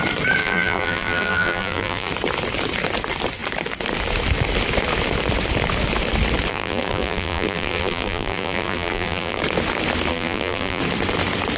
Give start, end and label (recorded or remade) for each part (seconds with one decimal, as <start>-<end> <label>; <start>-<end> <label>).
0.0-0.4 recorded; 0.4-2.1 remade; 2.1-6.5 recorded; 6.5-9.4 remade; 9.4-10.1 recorded; 10.1-10.8 remade; 10.8-11.6 recorded